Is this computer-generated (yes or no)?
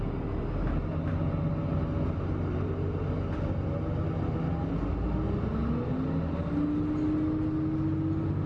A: no